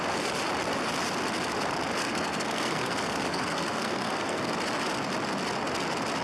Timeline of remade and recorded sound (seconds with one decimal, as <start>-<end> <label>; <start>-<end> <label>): 0.0-2.0 recorded; 2.0-4.5 remade; 4.5-6.2 recorded